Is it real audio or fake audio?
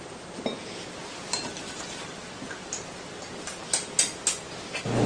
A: real